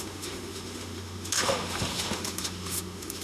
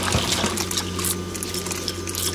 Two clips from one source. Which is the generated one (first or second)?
first